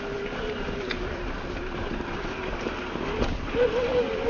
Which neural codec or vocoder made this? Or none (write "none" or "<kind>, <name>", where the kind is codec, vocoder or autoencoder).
none